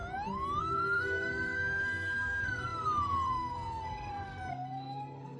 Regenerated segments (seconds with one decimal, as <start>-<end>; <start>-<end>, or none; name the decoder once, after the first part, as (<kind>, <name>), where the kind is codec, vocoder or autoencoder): 0.6-5.4 (codec, SNAC)